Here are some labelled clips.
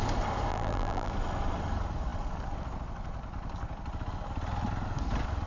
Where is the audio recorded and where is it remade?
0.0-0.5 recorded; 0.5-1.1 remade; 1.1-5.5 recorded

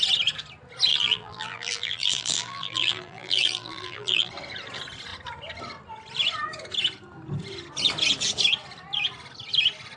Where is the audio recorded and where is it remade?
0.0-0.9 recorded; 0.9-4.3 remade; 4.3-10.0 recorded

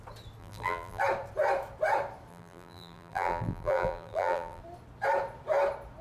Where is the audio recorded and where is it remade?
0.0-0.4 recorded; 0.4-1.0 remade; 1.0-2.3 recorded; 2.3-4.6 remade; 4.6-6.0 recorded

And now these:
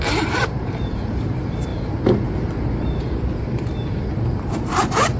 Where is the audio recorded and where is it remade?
0.0-1.7 remade; 1.7-4.2 recorded; 4.2-5.2 remade

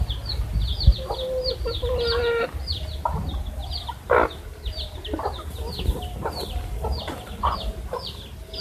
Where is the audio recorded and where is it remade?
0.0-0.5 recorded; 0.5-3.4 remade; 3.4-8.6 recorded